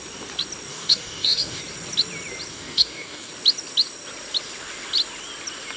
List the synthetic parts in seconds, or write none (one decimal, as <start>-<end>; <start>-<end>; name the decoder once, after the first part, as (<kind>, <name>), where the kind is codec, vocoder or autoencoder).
0.7-1.6 (codec, DAC); 2.5-3.3